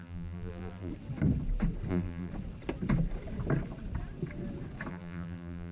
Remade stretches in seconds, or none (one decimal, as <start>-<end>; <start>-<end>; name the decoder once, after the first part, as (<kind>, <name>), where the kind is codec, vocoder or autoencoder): 0.0-0.9 (vocoder, BigVGAN v2); 1.9-2.3; 4.9-5.7